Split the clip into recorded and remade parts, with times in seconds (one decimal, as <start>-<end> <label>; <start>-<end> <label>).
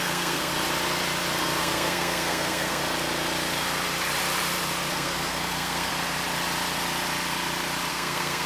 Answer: 0.0-0.5 remade; 0.5-1.6 recorded; 1.6-2.8 remade; 2.8-4.9 recorded; 4.9-5.9 remade; 5.9-7.9 recorded; 7.9-8.5 remade